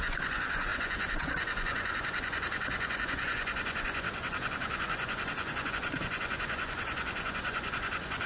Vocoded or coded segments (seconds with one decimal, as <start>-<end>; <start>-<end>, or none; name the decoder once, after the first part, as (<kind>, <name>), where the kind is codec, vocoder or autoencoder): 0.0-8.3 (vocoder, Vocos)